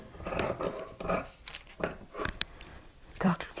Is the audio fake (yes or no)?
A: yes